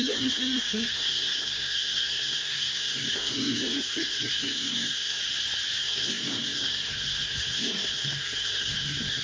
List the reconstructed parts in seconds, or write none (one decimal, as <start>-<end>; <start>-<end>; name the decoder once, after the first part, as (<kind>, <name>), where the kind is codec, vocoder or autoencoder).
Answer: 0.0-5.2 (codec, SNAC); 5.8-9.2